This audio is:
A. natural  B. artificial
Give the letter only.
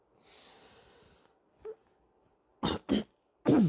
A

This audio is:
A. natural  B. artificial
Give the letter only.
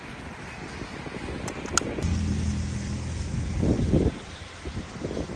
A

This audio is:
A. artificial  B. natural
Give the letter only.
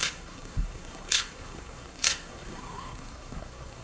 A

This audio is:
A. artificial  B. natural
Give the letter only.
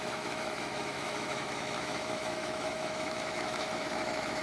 A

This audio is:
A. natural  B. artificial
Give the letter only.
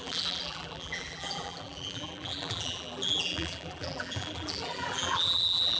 B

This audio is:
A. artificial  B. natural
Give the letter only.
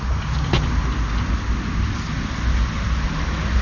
B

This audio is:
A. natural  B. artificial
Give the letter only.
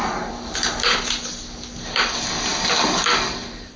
A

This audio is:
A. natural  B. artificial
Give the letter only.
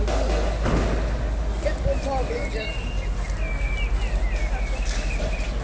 A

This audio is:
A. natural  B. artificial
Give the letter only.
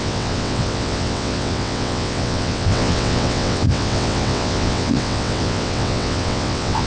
B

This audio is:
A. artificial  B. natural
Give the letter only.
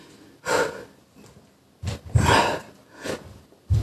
B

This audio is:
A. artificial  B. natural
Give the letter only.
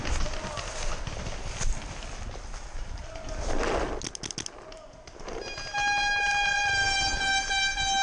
B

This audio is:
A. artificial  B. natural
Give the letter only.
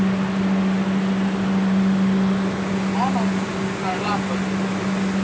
B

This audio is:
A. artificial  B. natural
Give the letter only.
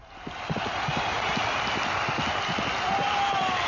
B